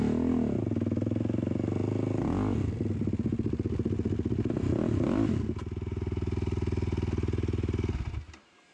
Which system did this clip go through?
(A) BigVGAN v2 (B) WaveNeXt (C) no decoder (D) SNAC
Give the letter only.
C